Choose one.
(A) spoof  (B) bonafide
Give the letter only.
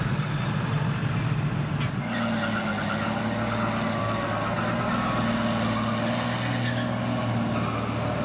B